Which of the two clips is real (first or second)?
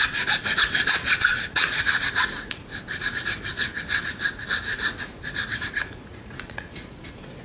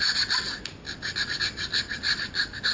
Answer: second